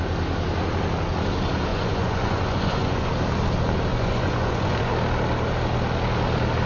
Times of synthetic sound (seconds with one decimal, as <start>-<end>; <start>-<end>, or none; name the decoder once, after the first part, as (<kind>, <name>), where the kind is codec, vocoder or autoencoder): 1.7-3.1 (vocoder, Vocos); 3.9-4.9